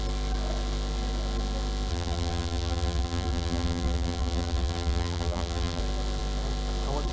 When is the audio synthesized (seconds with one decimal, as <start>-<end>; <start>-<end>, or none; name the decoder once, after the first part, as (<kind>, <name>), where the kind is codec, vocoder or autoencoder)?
1.9-5.8 (vocoder, BigVGAN v2)